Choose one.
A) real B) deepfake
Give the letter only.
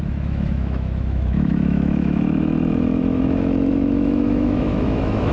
B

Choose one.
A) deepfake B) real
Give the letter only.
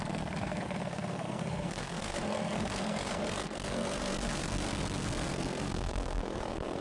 A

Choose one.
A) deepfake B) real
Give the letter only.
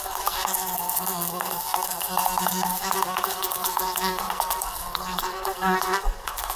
A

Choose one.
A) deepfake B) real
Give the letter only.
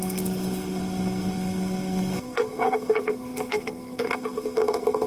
A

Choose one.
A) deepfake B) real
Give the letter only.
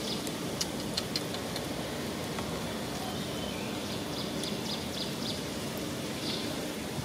B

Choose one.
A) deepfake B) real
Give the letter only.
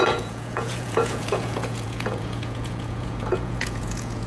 A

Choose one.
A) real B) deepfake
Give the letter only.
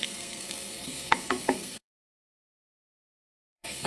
B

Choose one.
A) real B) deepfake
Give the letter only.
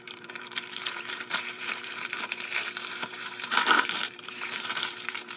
B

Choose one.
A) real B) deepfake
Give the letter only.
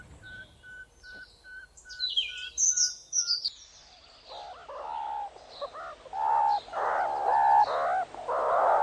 A